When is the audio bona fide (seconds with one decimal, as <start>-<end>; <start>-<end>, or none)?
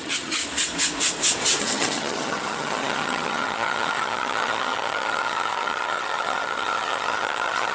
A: 0.4-1.6